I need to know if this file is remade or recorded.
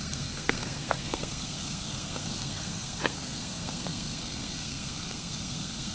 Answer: remade